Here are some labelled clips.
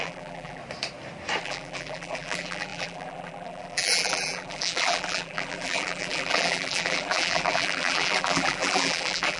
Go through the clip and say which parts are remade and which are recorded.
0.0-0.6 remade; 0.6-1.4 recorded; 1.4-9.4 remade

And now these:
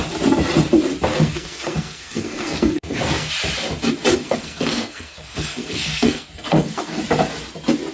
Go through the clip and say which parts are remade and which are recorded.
0.0-1.1 recorded; 1.1-3.3 remade; 3.3-4.1 recorded; 4.1-7.0 remade; 7.0-7.9 recorded

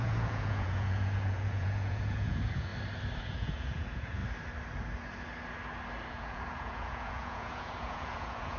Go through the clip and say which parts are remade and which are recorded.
0.0-2.7 remade; 2.7-3.2 recorded; 3.2-4.2 remade; 4.2-6.1 recorded; 6.1-8.6 remade

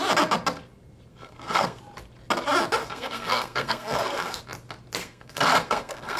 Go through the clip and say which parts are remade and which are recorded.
0.0-1.1 recorded; 1.1-1.8 remade; 1.8-2.8 recorded; 2.8-4.4 remade; 4.4-5.0 recorded; 5.0-6.2 remade

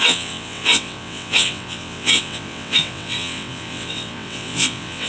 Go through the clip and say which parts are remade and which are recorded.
0.0-5.1 remade

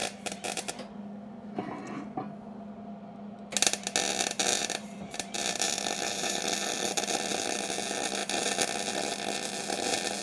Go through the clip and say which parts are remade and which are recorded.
0.0-4.5 recorded; 4.5-6.4 remade; 6.4-10.2 recorded

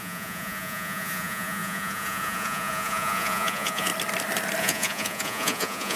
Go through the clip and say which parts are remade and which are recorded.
0.0-3.9 remade; 3.9-4.6 recorded; 4.6-6.0 remade

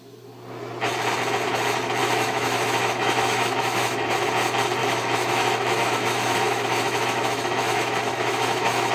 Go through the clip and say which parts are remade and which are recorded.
0.0-2.0 recorded; 2.0-4.1 remade; 4.1-4.8 recorded; 4.8-8.9 remade